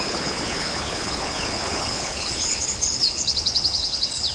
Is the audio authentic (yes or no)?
no